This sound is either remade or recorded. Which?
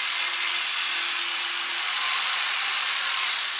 remade